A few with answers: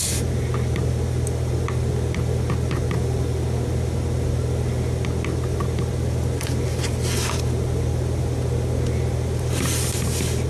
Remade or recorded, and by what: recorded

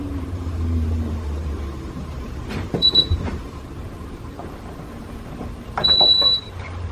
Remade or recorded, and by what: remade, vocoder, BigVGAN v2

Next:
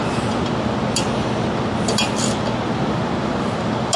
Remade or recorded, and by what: recorded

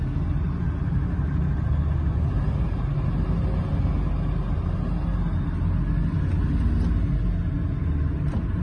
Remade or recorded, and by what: recorded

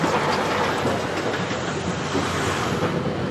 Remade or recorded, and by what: recorded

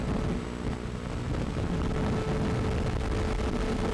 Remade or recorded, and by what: recorded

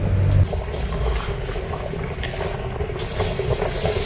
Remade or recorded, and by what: recorded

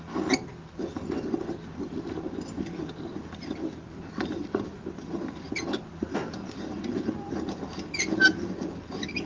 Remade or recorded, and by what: recorded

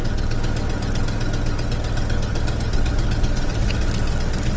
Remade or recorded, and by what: recorded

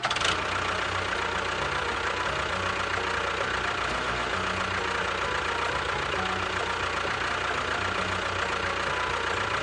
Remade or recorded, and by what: recorded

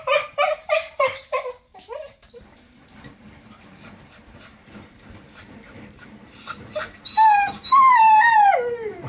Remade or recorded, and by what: remade, vocoder, BigVGAN v2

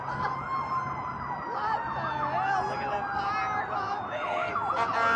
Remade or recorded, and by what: recorded